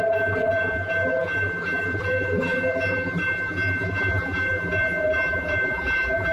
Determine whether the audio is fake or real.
fake